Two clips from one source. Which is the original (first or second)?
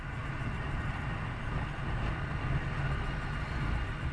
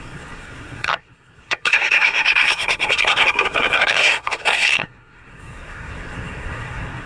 first